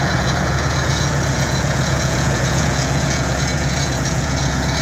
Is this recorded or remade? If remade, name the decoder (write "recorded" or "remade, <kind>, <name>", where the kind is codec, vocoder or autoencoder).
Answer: remade, vocoder, Vocos